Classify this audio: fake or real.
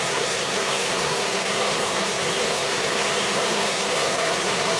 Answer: fake